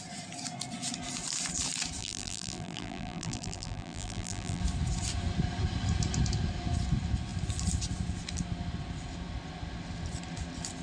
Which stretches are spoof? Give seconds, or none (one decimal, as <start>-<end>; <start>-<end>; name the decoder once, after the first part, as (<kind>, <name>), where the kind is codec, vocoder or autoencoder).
2.0-4.6 (vocoder, BigVGAN v2)